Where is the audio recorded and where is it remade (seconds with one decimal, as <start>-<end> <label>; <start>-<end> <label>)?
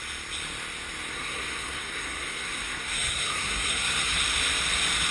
0.0-1.1 recorded; 1.1-4.2 remade; 4.2-5.1 recorded